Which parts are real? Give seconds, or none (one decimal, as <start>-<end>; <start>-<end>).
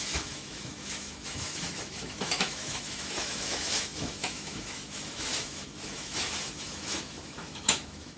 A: none